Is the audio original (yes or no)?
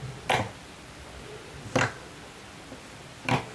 yes